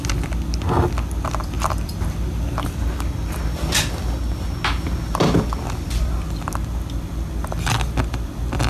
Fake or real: real